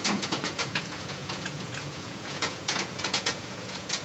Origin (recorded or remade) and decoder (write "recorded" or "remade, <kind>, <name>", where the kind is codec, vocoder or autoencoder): remade, vocoder, Vocos